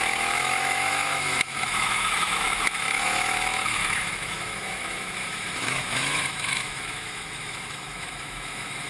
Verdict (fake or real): fake